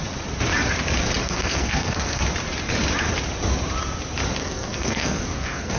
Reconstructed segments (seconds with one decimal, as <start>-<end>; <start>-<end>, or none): 1.2-2.2; 4.4-5.8